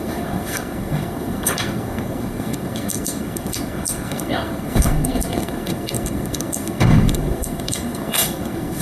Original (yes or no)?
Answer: no